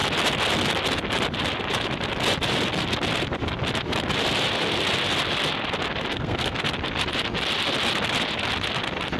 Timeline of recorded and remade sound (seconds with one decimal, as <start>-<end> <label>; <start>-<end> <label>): 0.0-6.1 recorded; 6.1-6.6 remade; 6.6-9.2 recorded

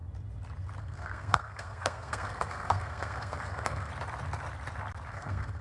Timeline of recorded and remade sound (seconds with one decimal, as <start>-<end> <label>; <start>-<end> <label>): 0.0-0.8 recorded; 0.8-3.9 remade; 3.9-5.1 recorded; 5.1-5.6 remade